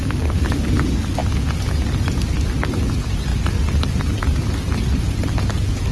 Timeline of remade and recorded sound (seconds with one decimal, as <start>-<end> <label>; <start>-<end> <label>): 0.0-5.9 recorded